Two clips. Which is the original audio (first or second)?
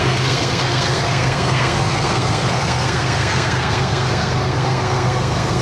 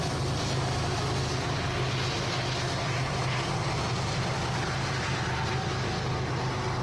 second